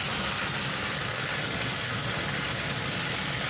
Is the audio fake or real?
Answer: real